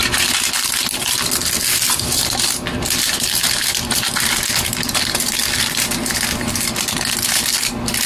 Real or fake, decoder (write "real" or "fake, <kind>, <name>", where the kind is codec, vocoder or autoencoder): real